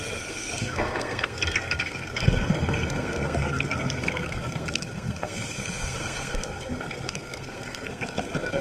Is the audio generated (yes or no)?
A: yes